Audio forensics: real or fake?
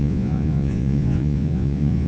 fake